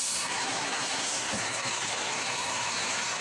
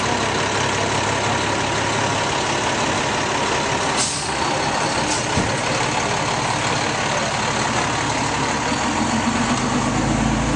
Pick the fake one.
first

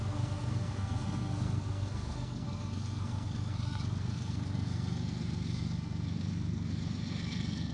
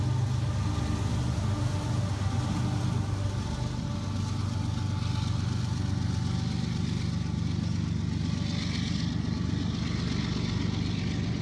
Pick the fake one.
first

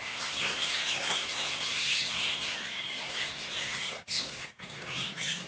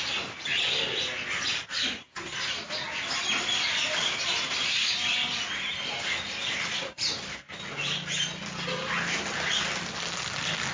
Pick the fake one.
first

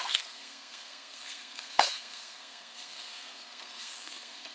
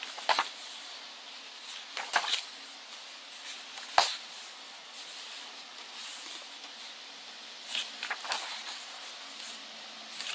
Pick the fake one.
first